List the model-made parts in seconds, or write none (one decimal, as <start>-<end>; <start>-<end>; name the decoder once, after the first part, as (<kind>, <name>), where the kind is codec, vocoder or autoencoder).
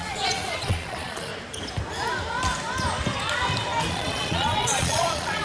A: 0.0-1.3 (vocoder, Vocos); 3.9-5.4